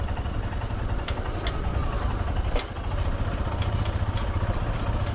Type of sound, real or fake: real